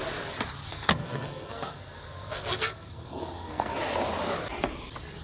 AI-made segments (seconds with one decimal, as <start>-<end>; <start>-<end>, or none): 0.7-3.8